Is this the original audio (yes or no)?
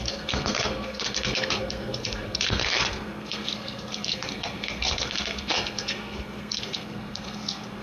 no